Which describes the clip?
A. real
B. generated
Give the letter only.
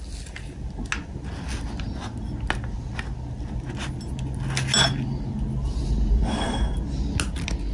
A